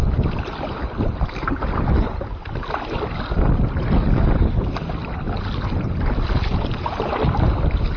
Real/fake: real